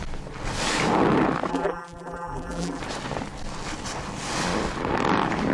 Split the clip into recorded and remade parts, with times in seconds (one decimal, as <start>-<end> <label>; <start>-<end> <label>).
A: 0.0-1.5 recorded; 1.5-2.8 remade; 2.8-5.5 recorded